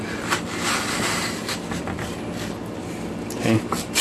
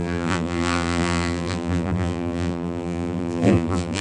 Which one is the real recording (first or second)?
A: first